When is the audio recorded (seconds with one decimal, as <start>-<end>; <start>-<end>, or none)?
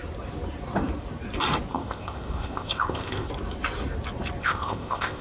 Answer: 0.0-1.7; 3.3-4.4